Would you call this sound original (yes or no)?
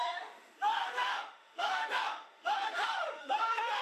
no